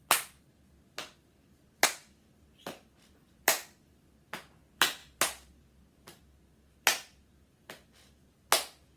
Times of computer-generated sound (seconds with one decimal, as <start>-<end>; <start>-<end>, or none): none